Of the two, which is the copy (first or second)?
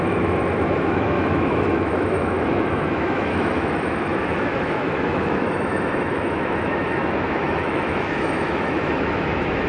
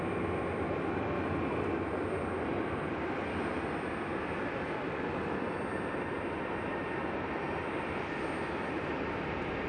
first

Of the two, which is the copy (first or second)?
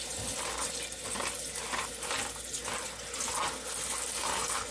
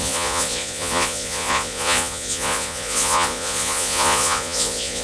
second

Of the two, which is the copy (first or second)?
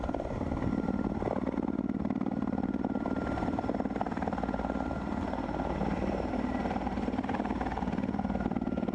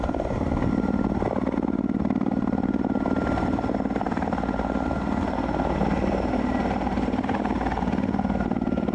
first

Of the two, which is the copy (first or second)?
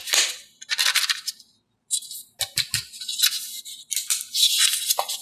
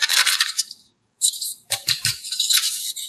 second